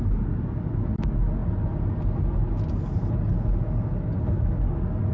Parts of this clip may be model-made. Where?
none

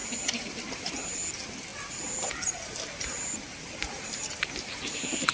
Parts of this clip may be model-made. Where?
0.0-1.2; 1.7-5.3

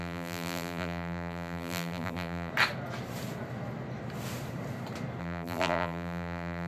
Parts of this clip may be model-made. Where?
0.0-2.5; 5.2-6.7

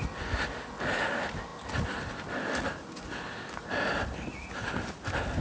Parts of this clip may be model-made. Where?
none

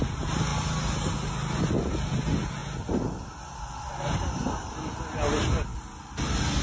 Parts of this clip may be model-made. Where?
2.6-3.8